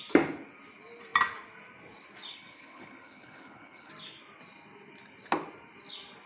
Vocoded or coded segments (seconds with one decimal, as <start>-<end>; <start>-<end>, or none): 2.3-3.9